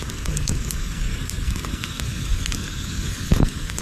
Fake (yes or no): yes